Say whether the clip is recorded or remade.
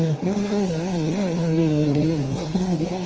remade